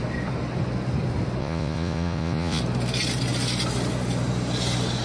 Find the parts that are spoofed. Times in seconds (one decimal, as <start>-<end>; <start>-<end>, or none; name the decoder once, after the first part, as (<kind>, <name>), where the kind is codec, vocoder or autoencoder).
1.4-2.6 (vocoder, Vocos)